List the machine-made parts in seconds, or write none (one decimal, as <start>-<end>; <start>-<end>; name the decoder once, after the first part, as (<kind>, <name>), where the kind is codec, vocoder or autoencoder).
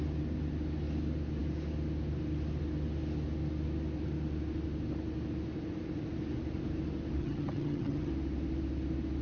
7.2-8.1 (vocoder, HiFi-GAN)